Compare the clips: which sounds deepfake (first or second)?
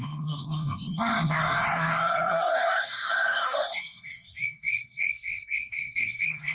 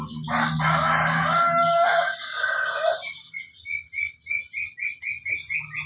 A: first